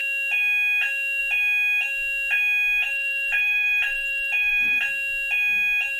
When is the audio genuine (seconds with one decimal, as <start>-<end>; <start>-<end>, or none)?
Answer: 0.0-2.8; 4.8-6.0